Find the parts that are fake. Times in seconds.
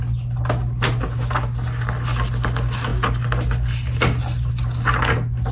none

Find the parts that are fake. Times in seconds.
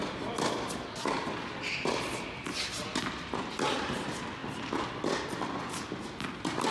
none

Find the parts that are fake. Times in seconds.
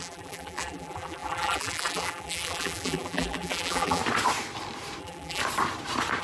0.0-4.0 (vocoder, BigVGAN v2); 5.0-5.4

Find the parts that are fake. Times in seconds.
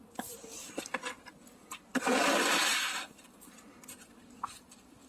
none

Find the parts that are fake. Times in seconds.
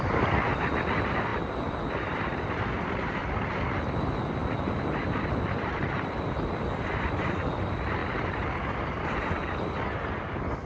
0.0-1.3 (vocoder, BigVGAN v2); 1.9-3.2; 5.4-8.0; 10.2-10.7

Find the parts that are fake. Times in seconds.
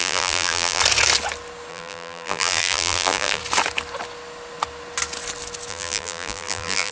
0.0-0.8 (vocoder, BigVGAN v2); 1.7-3.4; 5.7-6.9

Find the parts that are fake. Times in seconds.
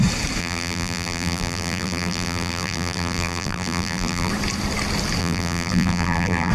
0.4-4.3 (vocoder, BigVGAN v2); 5.2-6.5